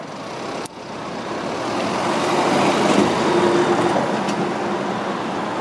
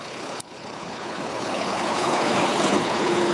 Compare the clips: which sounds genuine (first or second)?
first